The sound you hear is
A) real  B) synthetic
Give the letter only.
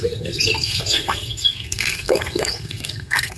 B